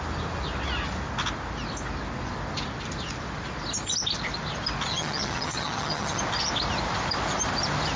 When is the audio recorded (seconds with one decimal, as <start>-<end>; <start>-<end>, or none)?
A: 0.0-4.9; 6.2-8.0